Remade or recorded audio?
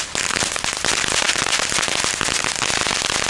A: recorded